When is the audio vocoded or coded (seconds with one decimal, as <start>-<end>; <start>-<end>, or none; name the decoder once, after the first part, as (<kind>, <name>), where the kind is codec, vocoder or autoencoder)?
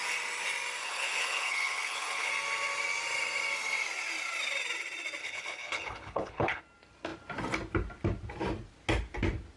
0.8-2.3 (codec, HILCodec); 5.2-6.6